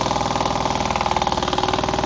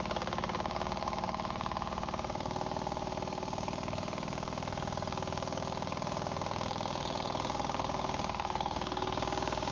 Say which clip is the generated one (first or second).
second